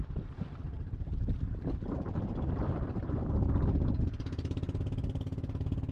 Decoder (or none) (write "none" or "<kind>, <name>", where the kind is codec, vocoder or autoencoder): none